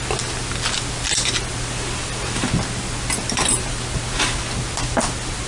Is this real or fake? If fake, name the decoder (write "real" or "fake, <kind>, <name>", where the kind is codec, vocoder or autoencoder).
real